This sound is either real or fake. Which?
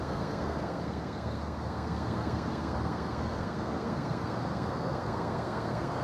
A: fake